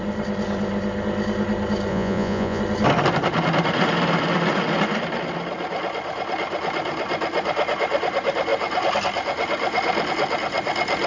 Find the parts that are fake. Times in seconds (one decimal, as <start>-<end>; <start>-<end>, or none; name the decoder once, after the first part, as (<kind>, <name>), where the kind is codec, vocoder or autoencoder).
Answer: 1.9-2.6 (vocoder, Vocos)